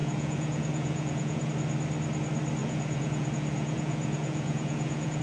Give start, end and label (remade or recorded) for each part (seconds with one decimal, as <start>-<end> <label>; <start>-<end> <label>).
0.0-1.5 remade; 1.5-2.6 recorded; 2.6-5.2 remade